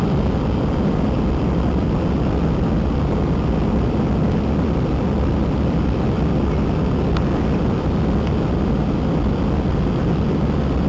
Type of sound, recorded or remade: recorded